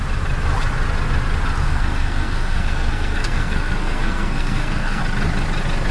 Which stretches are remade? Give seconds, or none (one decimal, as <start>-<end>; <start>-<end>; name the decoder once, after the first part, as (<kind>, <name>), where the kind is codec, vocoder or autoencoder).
1.6-5.0 (codec, SNAC)